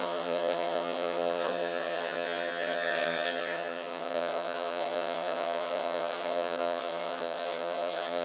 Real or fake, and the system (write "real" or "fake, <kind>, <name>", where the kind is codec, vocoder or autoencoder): fake, vocoder, HiFi-GAN